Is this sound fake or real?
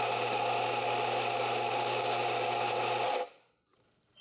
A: real